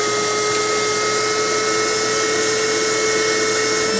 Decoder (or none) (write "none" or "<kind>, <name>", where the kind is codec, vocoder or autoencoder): none